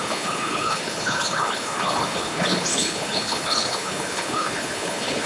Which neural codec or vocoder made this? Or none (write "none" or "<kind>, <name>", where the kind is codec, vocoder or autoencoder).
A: codec, HILCodec